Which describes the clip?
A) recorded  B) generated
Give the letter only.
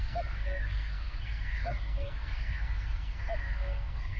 B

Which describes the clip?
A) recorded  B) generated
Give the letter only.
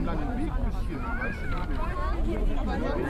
A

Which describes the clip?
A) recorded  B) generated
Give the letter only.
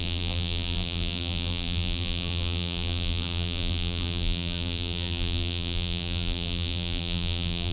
B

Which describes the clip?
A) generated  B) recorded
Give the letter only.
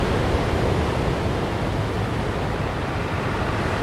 B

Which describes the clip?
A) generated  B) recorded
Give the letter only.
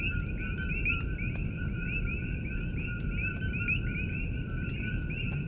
B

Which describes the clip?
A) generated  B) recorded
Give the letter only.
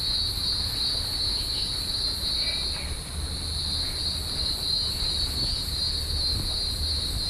B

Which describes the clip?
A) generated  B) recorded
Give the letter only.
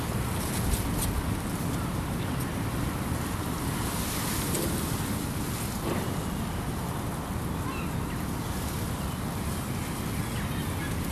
B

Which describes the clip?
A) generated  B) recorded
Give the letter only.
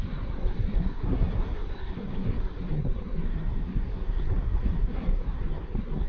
A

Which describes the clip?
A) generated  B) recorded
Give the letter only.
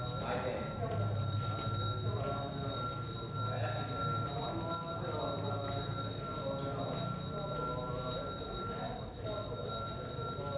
B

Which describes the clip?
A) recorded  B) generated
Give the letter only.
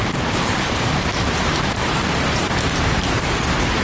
B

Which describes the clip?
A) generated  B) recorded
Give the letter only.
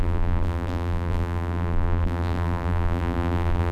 A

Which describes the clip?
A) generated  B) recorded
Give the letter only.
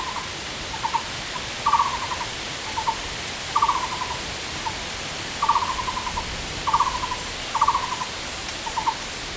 B